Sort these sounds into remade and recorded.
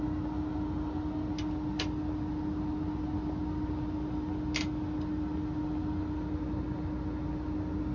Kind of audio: recorded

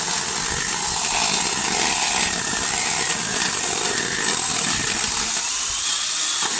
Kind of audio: recorded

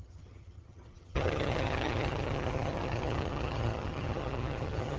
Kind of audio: remade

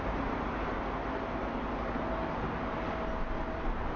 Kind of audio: recorded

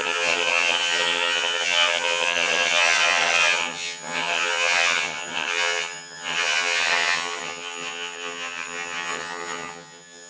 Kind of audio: remade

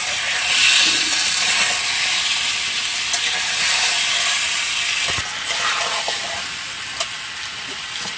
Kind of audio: recorded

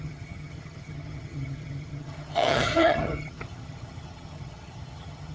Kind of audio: remade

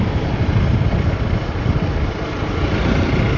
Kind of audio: recorded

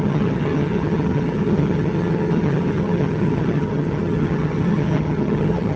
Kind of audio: remade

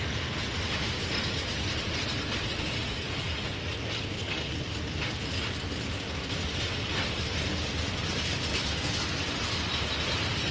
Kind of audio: recorded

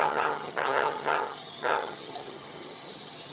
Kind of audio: remade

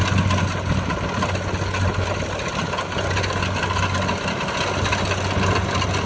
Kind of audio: recorded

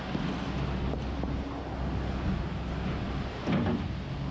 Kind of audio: recorded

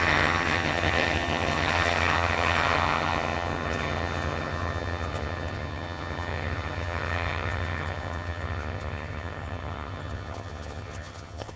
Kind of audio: remade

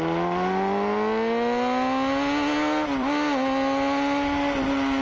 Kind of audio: recorded